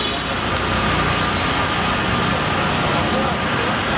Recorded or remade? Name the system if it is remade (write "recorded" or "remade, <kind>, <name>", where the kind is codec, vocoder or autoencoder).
recorded